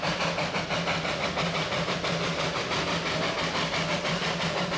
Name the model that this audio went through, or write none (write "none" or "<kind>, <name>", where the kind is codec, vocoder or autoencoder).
none